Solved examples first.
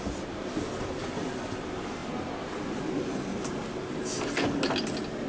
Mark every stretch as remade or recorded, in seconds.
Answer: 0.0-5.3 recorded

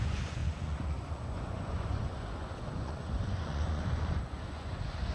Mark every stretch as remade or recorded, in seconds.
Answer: 0.0-5.1 remade

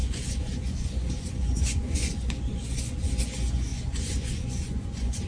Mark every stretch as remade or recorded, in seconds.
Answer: 0.0-5.3 remade

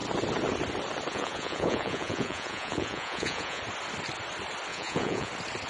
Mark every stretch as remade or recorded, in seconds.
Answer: 0.0-1.1 recorded; 1.1-3.6 remade; 3.6-4.7 recorded; 4.7-5.3 remade; 5.3-5.7 recorded